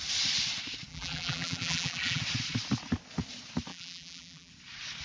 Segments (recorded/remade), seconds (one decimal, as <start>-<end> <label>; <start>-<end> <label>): 0.0-0.9 recorded; 0.9-2.2 remade; 2.2-3.7 recorded; 3.7-4.5 remade; 4.5-5.0 recorded